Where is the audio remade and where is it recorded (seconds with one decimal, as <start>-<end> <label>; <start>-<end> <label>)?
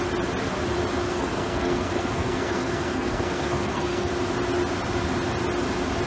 0.0-1.1 recorded; 1.1-4.1 remade; 4.1-6.1 recorded